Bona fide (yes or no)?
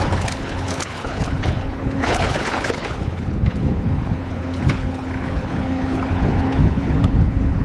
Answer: no